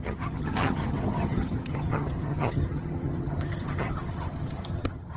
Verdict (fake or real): fake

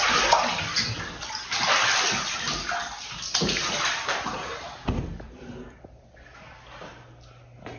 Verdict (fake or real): real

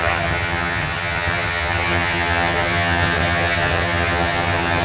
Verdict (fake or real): fake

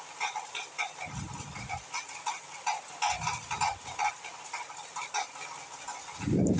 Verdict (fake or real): real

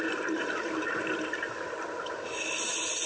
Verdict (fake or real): real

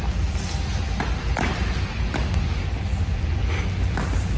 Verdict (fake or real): real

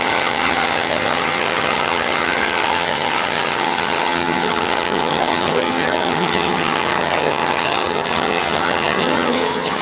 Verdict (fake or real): fake